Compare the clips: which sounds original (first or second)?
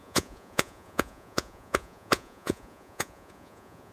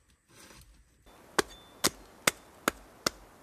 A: second